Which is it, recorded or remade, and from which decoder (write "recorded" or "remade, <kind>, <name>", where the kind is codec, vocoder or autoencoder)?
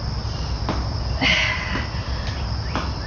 recorded